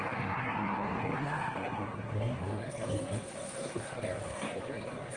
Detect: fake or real fake